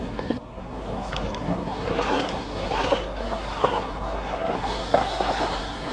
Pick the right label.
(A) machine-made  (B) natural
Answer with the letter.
A